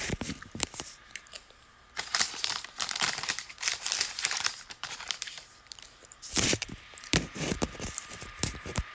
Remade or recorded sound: remade